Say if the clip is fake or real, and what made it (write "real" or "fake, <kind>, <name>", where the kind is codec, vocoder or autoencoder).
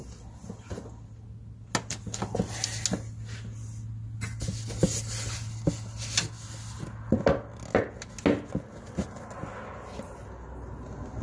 real